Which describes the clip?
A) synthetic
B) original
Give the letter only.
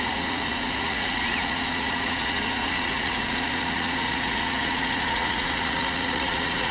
A